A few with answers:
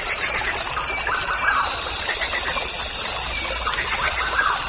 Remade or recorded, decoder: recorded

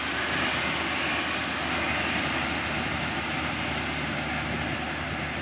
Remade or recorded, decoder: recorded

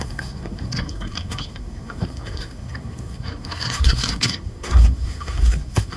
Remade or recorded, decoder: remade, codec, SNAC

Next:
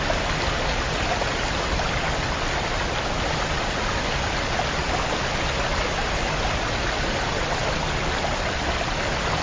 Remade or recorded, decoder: recorded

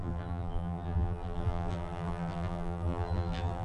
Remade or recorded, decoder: remade, vocoder, BigVGAN v2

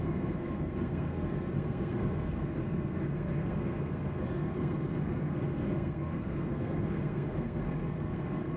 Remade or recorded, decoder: remade, codec, SNAC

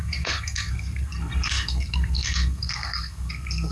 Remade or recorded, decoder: remade, codec, SNAC